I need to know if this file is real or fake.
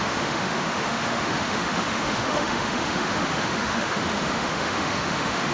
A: fake